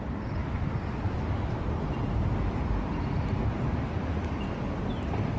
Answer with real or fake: real